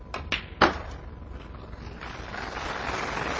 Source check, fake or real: real